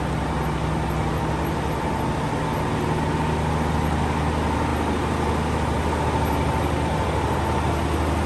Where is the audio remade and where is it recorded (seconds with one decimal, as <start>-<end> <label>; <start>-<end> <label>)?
0.0-8.3 recorded